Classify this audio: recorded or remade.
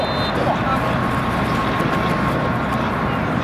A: recorded